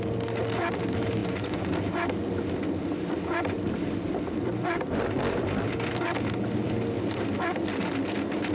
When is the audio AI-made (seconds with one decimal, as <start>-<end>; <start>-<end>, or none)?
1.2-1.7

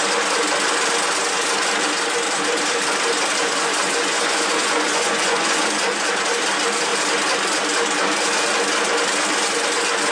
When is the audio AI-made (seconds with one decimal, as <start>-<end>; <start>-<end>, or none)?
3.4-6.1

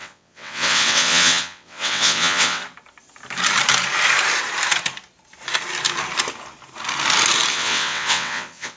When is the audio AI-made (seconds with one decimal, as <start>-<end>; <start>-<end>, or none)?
0.0-2.6; 7.5-8.8

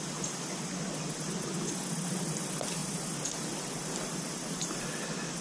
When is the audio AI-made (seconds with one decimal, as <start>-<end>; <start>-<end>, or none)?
none

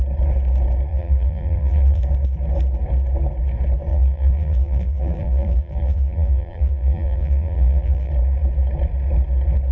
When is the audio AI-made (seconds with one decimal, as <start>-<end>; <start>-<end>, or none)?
0.9-2.0; 3.9-8.1